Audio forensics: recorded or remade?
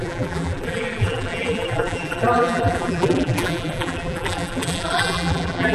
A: remade